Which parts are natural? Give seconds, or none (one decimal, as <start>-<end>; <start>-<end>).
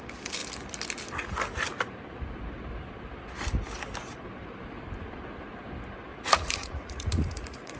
0.0-6.1